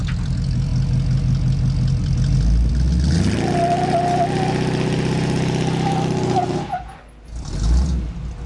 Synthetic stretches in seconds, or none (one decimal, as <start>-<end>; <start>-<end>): none